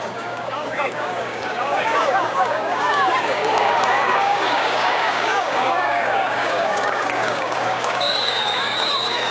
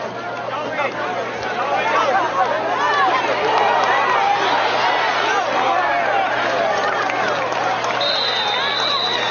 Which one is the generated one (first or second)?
first